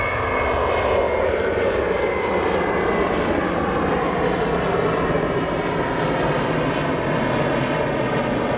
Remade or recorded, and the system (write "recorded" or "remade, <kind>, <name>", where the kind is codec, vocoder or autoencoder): recorded